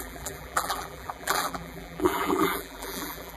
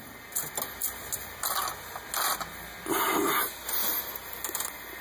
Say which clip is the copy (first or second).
first